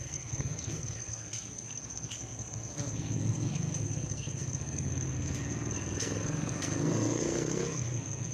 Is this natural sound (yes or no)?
no